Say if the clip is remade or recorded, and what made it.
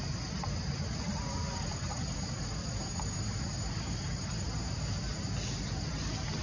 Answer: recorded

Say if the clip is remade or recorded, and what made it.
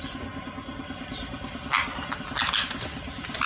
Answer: recorded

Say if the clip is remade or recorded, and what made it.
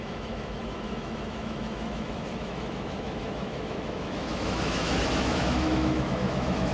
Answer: remade, autoencoder, DAC-VAE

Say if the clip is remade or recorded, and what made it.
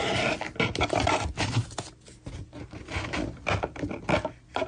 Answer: recorded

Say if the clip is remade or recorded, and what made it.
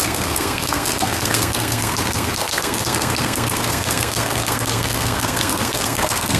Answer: remade, codec, SNAC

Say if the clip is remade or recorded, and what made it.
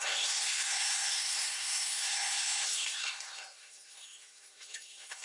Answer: remade, codec, SNAC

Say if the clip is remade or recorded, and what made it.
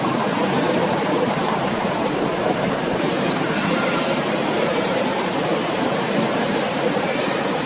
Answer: remade, vocoder, BigVGAN v2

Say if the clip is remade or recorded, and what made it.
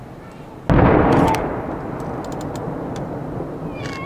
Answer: recorded